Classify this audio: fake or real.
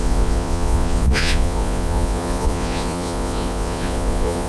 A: fake